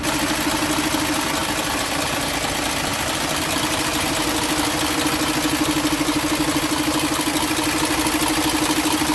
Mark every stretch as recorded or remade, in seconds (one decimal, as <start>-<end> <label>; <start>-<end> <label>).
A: 0.0-1.4 recorded; 1.4-2.2 remade; 2.2-2.9 recorded; 2.9-4.9 remade; 4.9-9.1 recorded